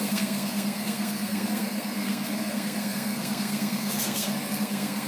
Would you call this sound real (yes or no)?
no